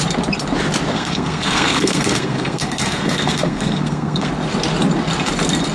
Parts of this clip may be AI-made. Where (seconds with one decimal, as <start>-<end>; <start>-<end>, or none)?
0.9-4.3